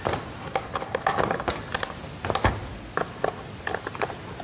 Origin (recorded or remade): recorded